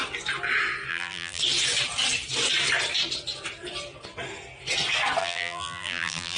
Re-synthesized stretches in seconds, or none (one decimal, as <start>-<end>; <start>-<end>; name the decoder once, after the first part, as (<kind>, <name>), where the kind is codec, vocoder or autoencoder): 0.9-1.4 (vocoder, BigVGAN v2); 5.2-6.4

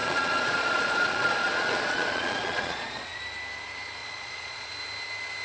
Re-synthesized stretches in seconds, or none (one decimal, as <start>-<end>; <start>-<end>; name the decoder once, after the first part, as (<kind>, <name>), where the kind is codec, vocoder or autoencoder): 0.0-3.2 (vocoder, Vocos); 4.0-4.7

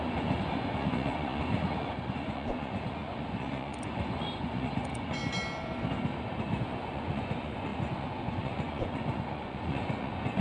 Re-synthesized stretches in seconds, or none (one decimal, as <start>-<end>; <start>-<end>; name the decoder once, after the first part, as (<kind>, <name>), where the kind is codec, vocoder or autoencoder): 0.0-5.2 (vocoder, Vocos); 6.6-10.4

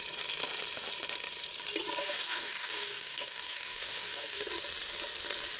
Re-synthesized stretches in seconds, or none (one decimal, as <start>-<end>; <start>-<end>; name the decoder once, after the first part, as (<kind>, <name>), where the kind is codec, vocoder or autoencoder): 2.0-4.5 (codec, DAC)

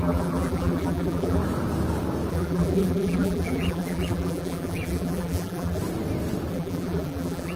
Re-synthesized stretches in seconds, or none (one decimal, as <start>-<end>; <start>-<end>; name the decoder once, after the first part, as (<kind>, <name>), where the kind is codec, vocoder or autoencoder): 0.0-1.4 (vocoder, BigVGAN v2); 2.3-5.8; 6.5-7.6

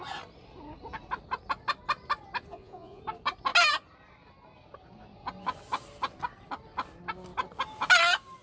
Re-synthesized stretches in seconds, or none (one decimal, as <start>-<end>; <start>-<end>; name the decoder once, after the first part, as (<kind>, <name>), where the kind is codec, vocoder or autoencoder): 2.5-3.0 (vocoder, Vocos)

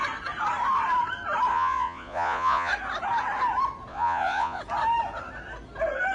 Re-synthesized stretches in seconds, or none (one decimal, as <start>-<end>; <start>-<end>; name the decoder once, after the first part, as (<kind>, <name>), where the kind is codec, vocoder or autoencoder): 1.5-2.7 (vocoder, Vocos); 3.9-4.6

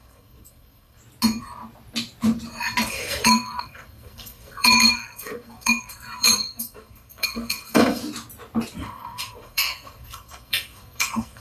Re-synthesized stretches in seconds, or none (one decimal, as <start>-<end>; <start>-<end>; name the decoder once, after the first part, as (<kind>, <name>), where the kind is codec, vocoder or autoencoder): 0.0-1.0 (codec, SNAC); 2.9-8.0; 8.8-11.4